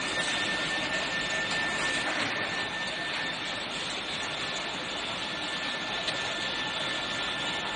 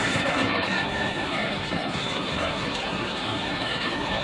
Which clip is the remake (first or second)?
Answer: second